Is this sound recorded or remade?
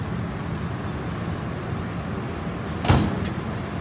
recorded